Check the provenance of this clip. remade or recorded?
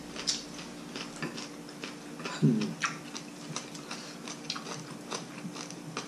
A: recorded